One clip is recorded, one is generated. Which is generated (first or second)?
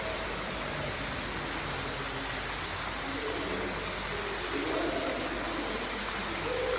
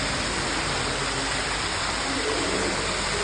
second